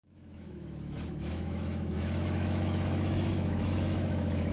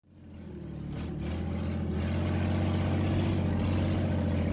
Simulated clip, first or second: first